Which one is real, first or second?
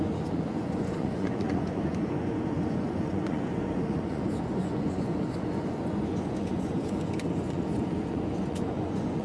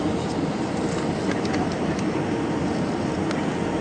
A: second